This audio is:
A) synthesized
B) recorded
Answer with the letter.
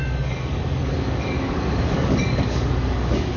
A